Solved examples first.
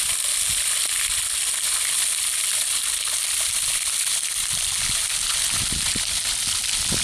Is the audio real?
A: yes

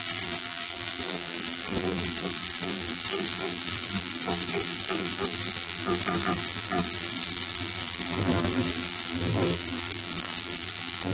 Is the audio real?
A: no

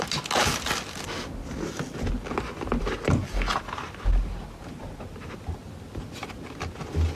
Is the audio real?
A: yes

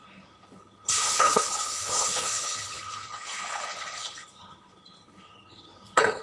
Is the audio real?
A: no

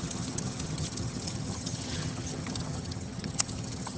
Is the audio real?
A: no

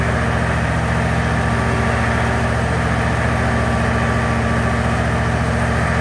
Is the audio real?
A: yes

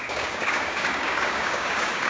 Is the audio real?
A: no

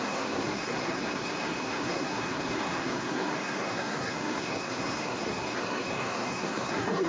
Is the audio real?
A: no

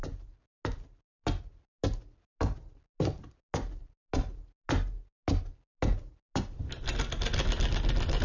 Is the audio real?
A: yes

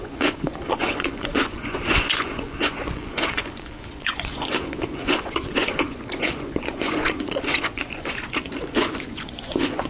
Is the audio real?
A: no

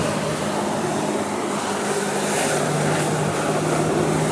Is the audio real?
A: yes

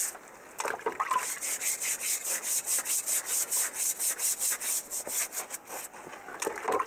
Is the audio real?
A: yes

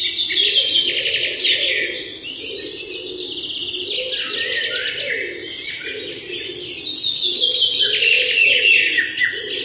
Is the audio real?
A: yes